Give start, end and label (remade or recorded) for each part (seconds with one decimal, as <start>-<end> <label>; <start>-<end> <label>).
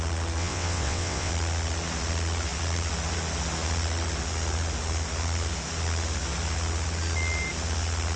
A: 0.0-0.4 recorded; 0.4-1.3 remade; 1.3-8.2 recorded